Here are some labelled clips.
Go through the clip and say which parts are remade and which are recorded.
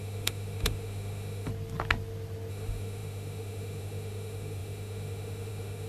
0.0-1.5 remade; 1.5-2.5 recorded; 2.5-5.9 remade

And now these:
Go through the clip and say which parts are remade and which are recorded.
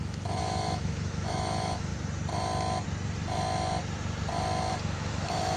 0.0-1.9 remade; 1.9-4.7 recorded; 4.7-5.6 remade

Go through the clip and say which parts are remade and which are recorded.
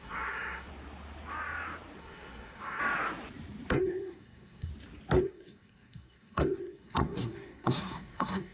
0.0-0.7 remade; 0.7-2.0 recorded; 2.0-2.8 remade; 2.8-3.7 recorded; 3.7-4.7 remade; 4.7-5.2 recorded; 5.2-8.5 remade